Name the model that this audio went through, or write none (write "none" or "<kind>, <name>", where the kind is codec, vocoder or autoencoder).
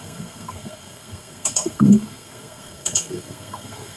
codec, SNAC